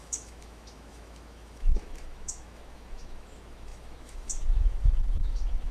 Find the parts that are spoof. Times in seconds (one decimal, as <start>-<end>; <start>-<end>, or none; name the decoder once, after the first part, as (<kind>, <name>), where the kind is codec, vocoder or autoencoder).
0.0-5.7 (autoencoder, DAC-VAE)